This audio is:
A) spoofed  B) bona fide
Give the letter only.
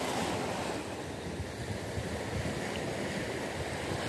B